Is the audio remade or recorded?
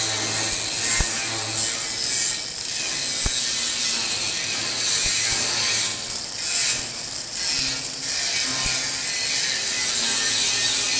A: recorded